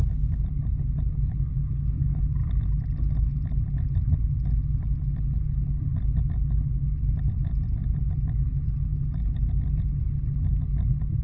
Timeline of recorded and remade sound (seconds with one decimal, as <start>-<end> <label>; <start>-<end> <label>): 0.0-1.6 recorded; 1.6-2.2 remade; 2.2-8.9 recorded; 8.9-9.5 remade; 9.5-11.2 recorded

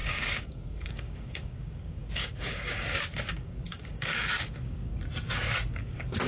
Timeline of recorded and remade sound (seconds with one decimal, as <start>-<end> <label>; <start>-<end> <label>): 0.0-4.9 remade; 4.9-5.7 recorded; 5.7-6.3 remade